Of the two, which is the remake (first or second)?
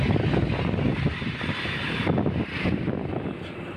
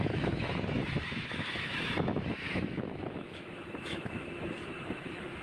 second